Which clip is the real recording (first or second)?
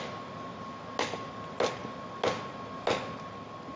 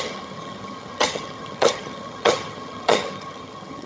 first